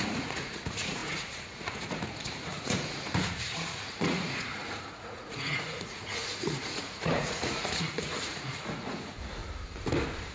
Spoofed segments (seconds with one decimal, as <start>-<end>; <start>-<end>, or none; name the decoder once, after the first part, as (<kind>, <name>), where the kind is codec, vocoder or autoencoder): 0.0-9.4 (vocoder, Vocos)

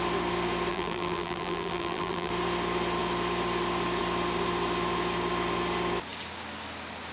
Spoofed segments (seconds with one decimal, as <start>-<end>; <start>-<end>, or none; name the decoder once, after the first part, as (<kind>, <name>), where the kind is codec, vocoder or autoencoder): 0.7-2.3 (vocoder, BigVGAN v2)

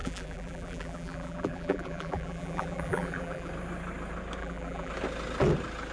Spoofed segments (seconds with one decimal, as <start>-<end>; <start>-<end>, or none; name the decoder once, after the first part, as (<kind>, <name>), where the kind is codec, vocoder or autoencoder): 0.0-3.5 (vocoder, BigVGAN v2); 4.4-4.9

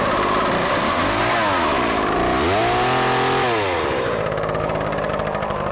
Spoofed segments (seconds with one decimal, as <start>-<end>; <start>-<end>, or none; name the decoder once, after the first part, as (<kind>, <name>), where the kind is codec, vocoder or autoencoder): 0.0-1.2 (vocoder, BigVGAN v2); 4.6-5.7

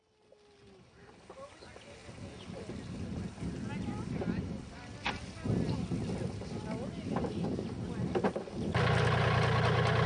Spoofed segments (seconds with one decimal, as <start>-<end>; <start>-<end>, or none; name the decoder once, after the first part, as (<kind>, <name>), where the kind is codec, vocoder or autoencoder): none

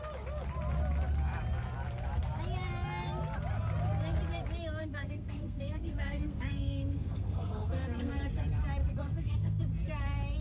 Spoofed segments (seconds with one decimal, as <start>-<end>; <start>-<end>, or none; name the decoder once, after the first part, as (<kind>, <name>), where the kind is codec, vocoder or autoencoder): 4.8-8.2 (codec, SNAC); 8.8-9.6